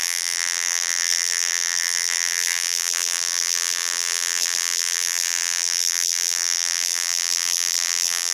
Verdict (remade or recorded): remade